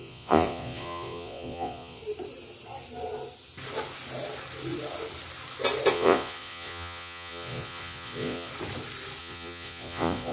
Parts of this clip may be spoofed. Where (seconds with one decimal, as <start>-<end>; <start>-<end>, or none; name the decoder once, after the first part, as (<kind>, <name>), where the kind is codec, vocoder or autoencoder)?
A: 0.0-2.0 (vocoder, Vocos); 5.9-8.5; 9.2-10.3